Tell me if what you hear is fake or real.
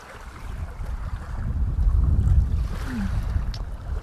real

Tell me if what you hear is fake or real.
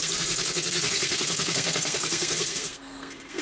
fake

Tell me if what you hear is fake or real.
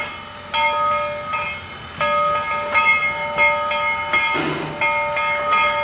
real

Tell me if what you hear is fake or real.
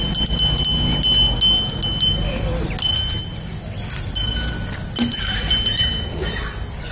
real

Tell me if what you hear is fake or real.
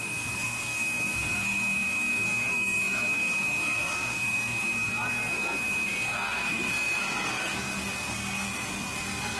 fake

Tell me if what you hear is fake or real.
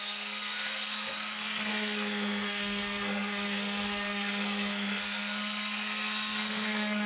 fake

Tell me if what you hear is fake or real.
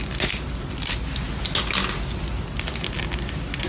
real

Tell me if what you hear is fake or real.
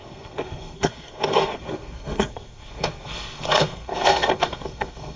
fake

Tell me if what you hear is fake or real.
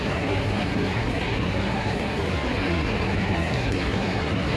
fake